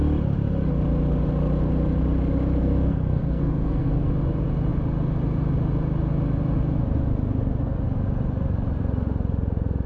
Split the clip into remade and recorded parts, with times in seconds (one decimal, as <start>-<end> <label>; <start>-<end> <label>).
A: 0.0-2.6 recorded; 2.6-4.1 remade; 4.1-9.9 recorded